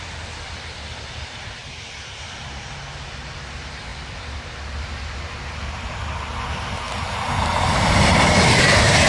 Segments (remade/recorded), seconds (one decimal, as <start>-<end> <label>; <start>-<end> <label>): 0.0-9.1 remade

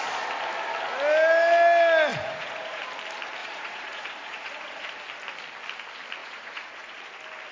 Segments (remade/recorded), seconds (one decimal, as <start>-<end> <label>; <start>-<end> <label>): 0.0-2.1 recorded; 2.1-2.8 remade; 2.8-3.4 recorded; 3.4-4.9 remade; 4.9-6.2 recorded; 6.2-7.0 remade; 7.0-7.5 recorded